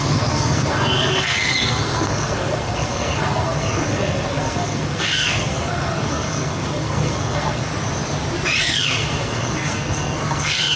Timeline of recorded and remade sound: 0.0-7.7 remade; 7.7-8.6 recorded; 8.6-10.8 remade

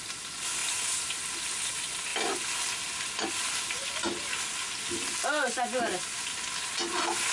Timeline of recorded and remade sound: 0.0-7.3 recorded

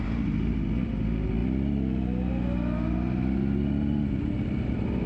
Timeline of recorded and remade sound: 0.0-5.1 recorded

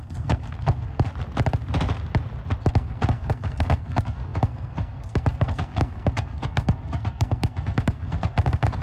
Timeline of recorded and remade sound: 0.0-1.1 remade; 1.1-2.6 recorded; 2.6-8.8 remade